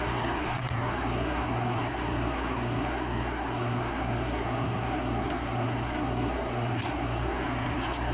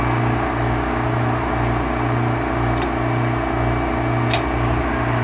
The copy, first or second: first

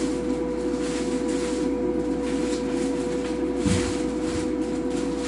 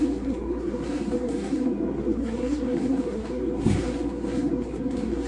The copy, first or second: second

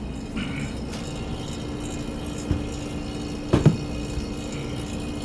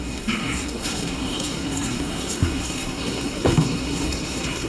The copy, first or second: second